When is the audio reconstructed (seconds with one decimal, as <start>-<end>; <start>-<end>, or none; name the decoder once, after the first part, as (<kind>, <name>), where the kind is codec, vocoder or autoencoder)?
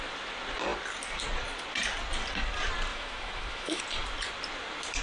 2.9-3.8 (autoencoder, DAC-VAE)